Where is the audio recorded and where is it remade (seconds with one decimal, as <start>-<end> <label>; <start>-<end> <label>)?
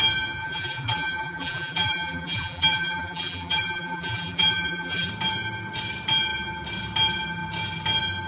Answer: 0.0-0.4 recorded; 0.4-5.1 remade; 5.1-8.3 recorded